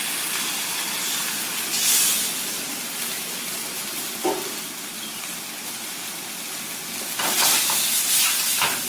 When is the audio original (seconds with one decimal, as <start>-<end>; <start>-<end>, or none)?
0.0-8.9